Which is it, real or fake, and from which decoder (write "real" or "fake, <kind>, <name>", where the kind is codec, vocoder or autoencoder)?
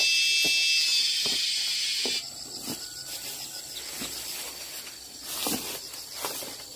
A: real